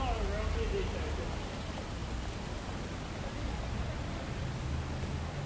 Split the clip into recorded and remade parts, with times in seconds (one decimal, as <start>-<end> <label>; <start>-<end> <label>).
0.0-5.5 recorded